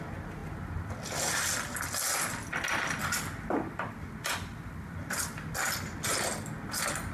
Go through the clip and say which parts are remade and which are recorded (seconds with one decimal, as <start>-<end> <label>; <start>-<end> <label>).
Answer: 0.0-7.1 recorded